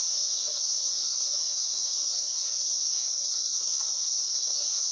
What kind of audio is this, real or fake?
fake